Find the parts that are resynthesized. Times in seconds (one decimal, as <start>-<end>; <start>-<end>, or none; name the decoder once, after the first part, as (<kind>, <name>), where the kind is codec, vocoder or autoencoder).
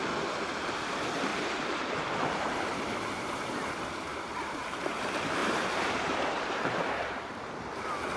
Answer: 1.3-3.5 (vocoder, BigVGAN v2); 4.1-5.0; 5.4-7.5